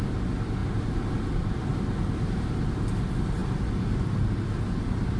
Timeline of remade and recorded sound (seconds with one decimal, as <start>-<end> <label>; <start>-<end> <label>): 0.0-0.6 recorded; 0.6-2.4 remade; 2.4-5.2 recorded